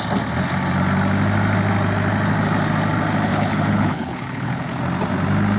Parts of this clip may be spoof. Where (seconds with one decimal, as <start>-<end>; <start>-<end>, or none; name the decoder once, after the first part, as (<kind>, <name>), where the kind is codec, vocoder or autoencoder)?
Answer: 3.3-4.8 (codec, HILCodec)